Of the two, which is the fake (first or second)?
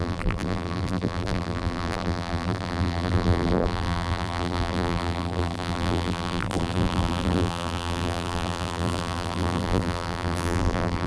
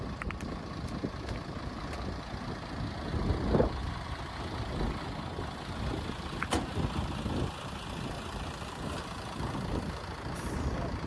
first